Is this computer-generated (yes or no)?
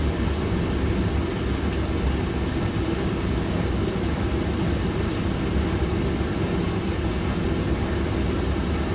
no